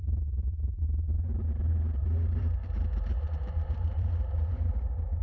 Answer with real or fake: fake